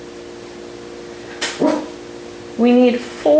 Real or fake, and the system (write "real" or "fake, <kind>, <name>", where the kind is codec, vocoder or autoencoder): real